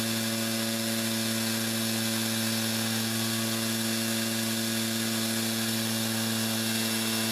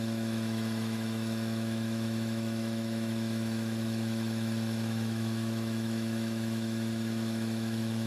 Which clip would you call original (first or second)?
first